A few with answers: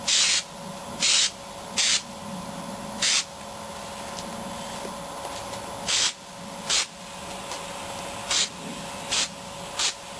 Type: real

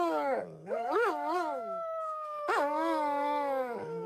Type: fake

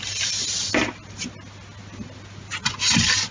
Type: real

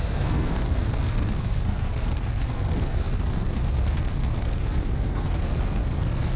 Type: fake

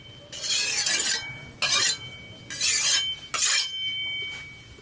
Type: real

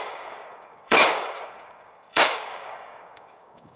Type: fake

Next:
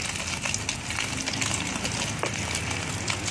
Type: real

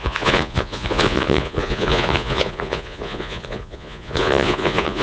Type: fake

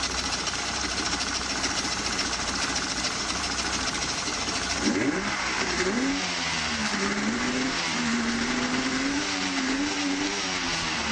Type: fake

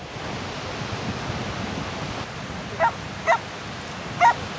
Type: real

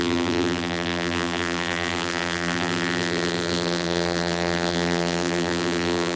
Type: fake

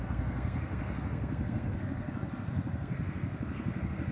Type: fake